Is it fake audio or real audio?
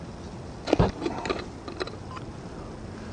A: real